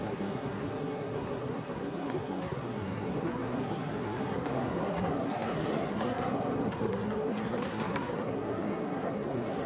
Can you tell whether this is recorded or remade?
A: remade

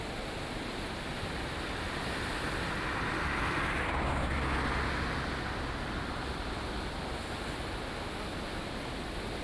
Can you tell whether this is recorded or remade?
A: recorded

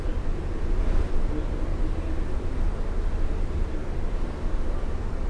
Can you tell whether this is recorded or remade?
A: recorded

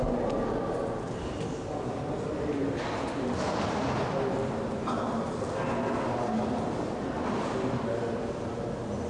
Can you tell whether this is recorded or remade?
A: recorded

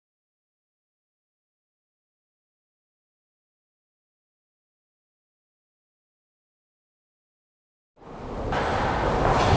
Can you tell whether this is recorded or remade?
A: recorded